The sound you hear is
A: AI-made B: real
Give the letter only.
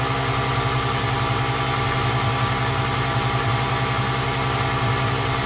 B